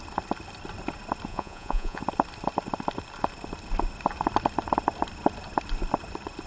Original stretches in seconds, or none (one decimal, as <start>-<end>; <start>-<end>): 0.0-1.3; 2.0-6.5